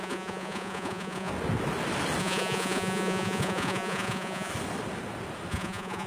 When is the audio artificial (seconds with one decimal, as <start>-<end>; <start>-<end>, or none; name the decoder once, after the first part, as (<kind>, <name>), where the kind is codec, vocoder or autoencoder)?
0.0-1.3 (vocoder, Vocos); 2.2-4.5; 5.5-6.1